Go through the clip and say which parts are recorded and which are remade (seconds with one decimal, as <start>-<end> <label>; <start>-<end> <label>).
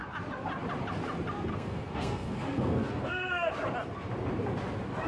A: 0.0-1.5 recorded; 1.5-3.5 remade; 3.5-5.1 recorded